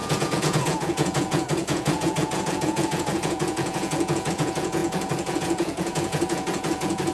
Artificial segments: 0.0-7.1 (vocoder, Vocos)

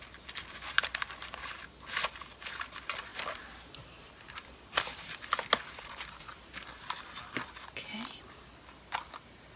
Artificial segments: none

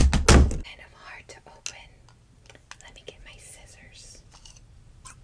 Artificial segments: 3.1-5.2 (vocoder, BigVGAN v2)

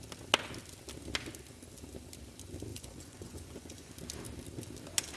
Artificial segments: 2.7-3.9 (vocoder, Vocos)

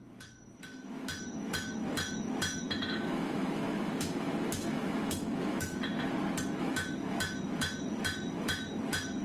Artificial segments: 0.0-5.9 (autoencoder, DAC-VAE); 6.6-9.2

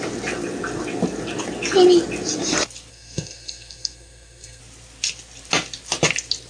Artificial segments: 2.9-4.6 (codec, SNAC)

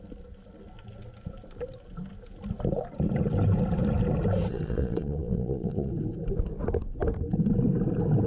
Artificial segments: 4.5-5.9 (vocoder, Vocos)